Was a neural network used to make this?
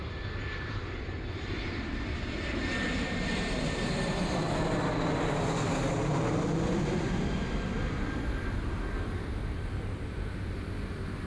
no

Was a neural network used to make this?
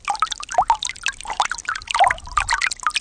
no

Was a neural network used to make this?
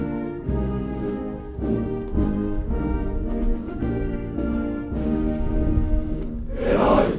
yes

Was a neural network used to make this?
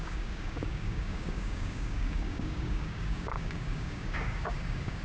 yes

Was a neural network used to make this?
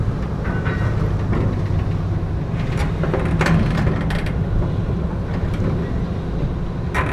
no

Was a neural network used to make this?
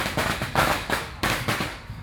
yes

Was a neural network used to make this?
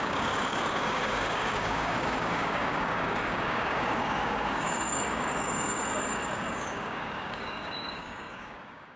yes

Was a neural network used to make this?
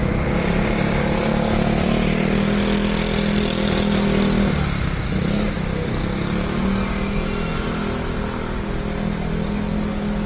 no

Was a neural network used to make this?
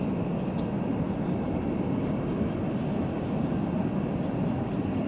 no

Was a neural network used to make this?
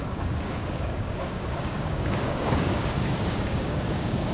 yes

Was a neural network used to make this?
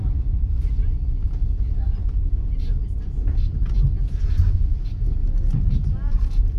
no